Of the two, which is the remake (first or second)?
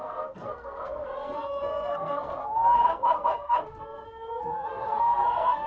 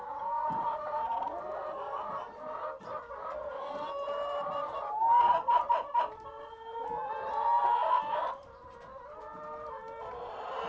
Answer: first